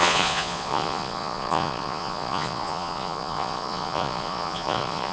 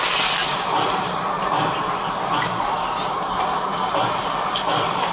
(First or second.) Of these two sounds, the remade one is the first